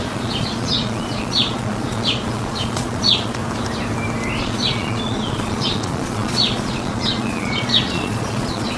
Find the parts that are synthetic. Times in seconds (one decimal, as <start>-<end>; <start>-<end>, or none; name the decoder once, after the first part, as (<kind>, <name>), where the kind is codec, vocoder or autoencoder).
0.0-3.4 (vocoder, Vocos); 4.4-8.8